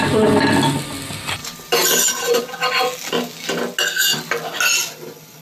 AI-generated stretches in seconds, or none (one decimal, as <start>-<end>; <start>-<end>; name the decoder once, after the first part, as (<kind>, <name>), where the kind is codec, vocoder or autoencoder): 1.4-2.4 (vocoder, BigVGAN v2)